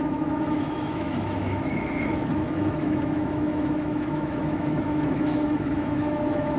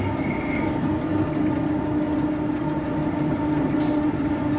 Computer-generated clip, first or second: first